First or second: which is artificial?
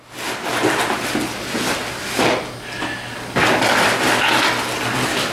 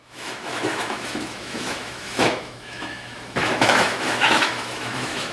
second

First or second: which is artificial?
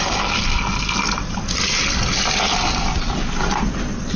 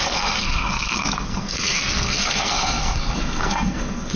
second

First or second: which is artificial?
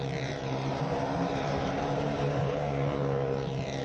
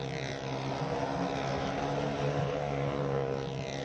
first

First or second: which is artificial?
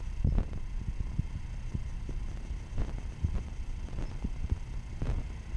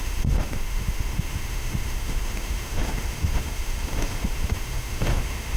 second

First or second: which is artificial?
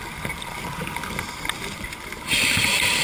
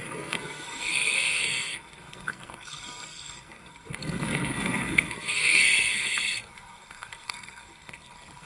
second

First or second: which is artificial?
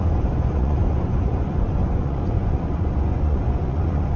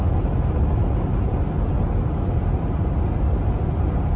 first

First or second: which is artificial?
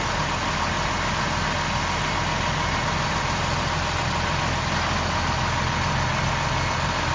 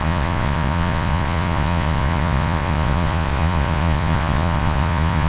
second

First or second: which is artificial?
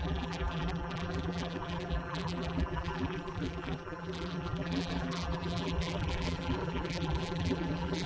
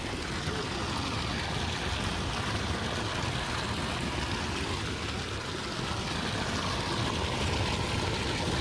first